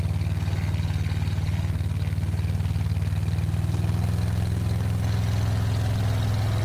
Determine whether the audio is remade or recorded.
recorded